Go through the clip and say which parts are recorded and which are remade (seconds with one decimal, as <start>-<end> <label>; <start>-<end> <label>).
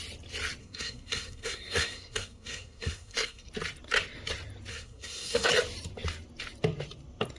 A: 0.0-0.6 recorded; 0.6-3.5 remade; 3.5-4.7 recorded; 4.7-5.5 remade; 5.5-7.4 recorded